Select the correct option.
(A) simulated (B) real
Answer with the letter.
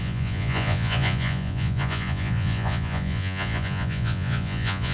A